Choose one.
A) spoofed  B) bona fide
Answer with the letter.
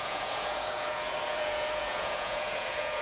A